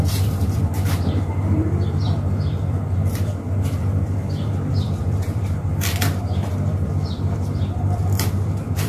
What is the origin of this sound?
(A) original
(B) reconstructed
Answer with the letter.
B